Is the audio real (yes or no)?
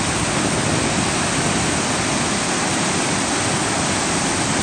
yes